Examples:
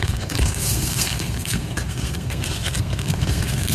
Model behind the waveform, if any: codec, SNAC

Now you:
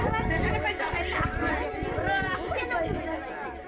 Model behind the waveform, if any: none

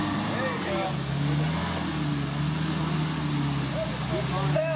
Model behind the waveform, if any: none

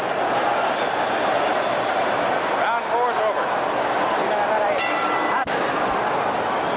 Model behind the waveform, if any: none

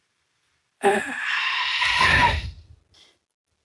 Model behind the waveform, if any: none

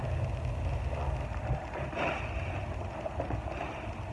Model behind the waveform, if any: none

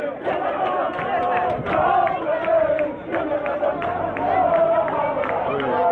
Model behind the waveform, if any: none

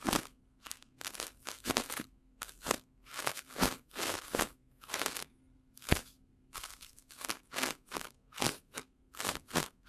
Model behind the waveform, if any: codec, SNAC